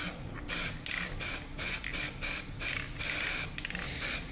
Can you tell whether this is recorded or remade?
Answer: recorded